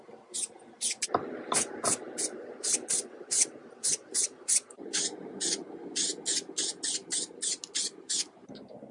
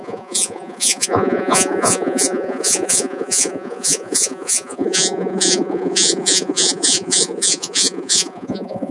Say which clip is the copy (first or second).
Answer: second